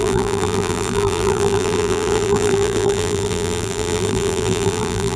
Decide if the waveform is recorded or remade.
remade